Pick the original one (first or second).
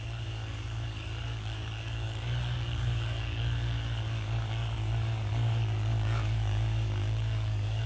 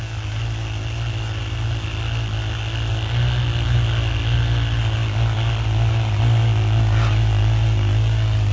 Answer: second